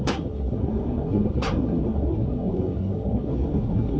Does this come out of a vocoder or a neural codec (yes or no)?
yes